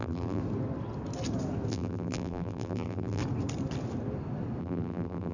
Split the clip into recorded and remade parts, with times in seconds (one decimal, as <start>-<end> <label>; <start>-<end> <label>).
0.0-0.4 remade; 0.4-1.7 recorded; 1.7-3.2 remade; 3.2-4.6 recorded; 4.6-5.3 remade